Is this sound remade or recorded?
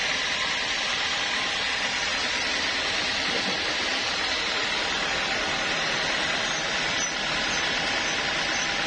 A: recorded